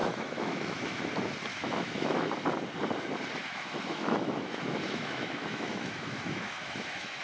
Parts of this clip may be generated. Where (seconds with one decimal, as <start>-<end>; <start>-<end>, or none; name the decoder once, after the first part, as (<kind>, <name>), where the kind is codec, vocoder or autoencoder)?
0.0-1.0 (autoencoder, DAC-VAE); 1.5-2.3; 3.4-7.2